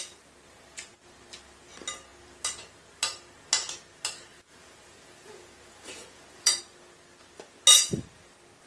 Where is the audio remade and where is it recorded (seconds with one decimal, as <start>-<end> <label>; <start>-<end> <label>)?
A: 0.0-4.3 recorded; 4.3-6.6 remade; 6.6-8.7 recorded